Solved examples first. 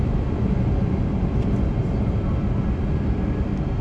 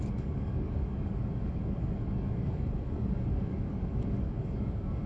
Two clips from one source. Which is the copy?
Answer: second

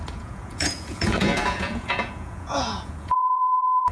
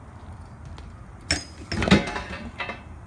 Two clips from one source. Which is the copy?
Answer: first